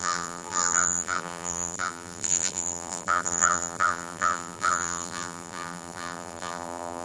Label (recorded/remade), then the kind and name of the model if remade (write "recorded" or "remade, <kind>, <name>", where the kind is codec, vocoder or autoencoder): remade, vocoder, BigVGAN v2